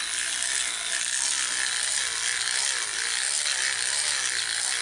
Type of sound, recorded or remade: recorded